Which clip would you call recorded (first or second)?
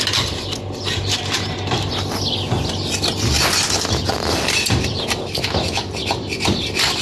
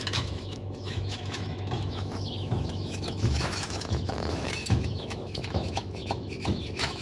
first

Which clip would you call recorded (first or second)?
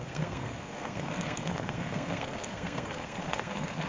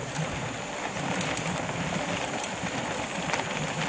second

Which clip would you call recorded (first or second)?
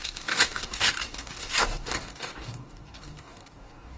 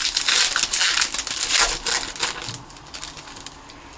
second